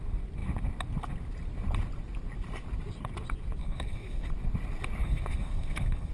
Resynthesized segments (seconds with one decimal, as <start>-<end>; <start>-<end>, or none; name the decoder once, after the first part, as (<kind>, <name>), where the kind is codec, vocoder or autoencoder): 3.6-4.3 (codec, HILCodec); 5.0-6.1